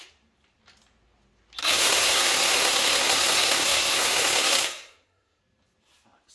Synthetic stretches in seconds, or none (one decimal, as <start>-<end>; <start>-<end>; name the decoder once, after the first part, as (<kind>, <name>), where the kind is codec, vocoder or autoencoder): 1.6-5.4 (codec, SNAC)